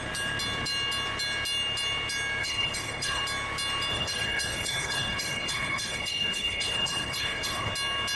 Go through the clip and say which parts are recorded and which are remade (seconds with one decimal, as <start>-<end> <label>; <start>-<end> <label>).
0.0-2.4 recorded; 2.4-3.2 remade; 3.2-3.9 recorded; 3.9-7.7 remade; 7.7-8.2 recorded